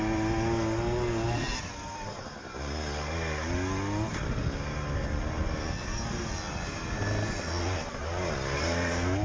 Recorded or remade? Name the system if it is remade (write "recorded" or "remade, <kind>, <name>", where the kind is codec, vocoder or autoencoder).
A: recorded